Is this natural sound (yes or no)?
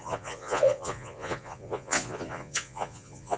no